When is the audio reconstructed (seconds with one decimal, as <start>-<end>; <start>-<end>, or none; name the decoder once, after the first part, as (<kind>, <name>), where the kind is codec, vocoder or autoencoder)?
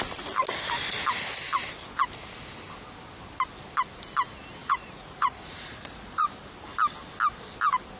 4.6-6.3 (vocoder, Vocos)